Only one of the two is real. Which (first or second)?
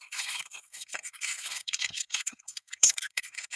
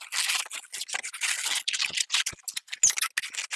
second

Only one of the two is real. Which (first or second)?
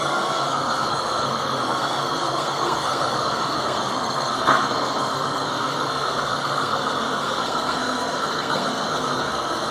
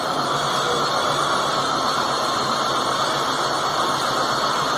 second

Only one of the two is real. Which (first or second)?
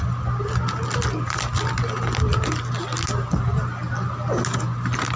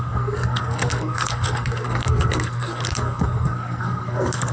first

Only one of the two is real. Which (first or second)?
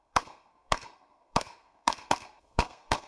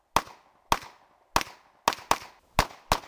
second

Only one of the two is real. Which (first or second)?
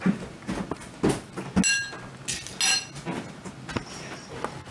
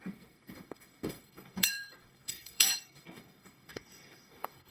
first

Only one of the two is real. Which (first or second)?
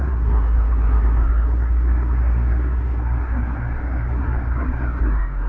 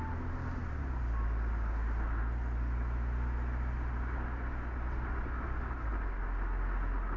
second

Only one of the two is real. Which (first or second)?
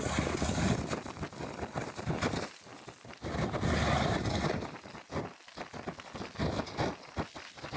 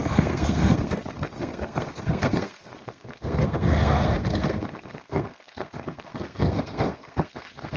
first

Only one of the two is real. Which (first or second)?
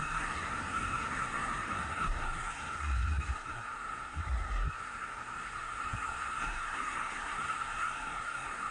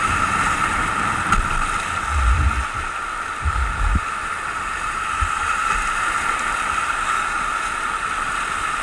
second